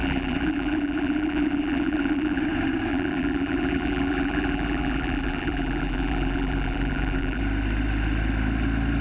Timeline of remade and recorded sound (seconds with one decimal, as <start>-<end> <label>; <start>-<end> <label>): 0.0-2.4 remade; 2.4-2.9 recorded; 2.9-7.4 remade; 7.4-9.0 recorded